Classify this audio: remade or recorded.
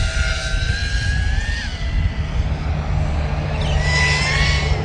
recorded